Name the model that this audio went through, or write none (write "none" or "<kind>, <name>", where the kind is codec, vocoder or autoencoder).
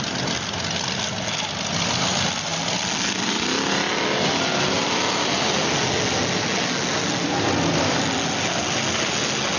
none